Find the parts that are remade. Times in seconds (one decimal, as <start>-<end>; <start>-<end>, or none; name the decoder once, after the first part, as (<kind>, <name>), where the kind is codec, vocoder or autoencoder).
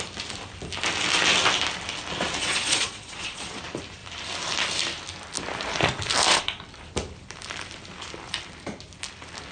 2.4-3.6 (vocoder, Vocos)